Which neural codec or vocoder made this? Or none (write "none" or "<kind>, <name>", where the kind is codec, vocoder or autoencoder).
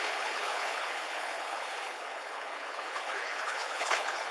codec, HILCodec